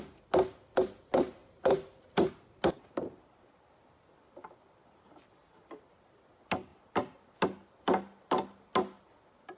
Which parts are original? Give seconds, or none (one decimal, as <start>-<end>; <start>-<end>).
0.0-1.4; 2.3-9.6